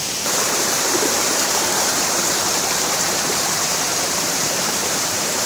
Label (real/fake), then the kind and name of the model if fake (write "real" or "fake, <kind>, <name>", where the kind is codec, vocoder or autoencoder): fake, vocoder, BigVGAN v2